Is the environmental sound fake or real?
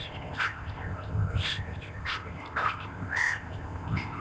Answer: fake